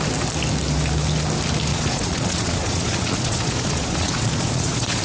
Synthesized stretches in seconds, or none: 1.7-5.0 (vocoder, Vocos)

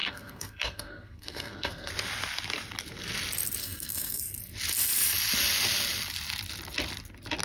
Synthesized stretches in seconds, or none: 0.0-1.9 (codec, SNAC); 3.6-4.2